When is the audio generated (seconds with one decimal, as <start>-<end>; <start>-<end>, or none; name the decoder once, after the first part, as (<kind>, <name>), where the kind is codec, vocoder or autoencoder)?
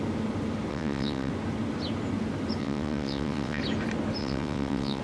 0.7-1.3 (vocoder, WaveNeXt); 2.6-3.6; 4.2-5.0